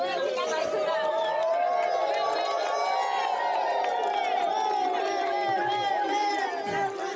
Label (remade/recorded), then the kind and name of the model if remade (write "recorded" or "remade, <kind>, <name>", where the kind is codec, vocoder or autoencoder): recorded